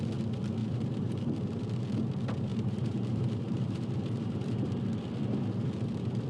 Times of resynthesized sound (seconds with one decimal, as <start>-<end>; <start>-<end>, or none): 0.6-1.6; 2.5-4.7